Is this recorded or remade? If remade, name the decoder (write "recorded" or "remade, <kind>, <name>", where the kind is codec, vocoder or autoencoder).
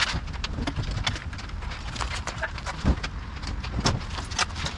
recorded